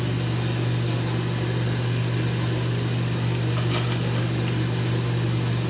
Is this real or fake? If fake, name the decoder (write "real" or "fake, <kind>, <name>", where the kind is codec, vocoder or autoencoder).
real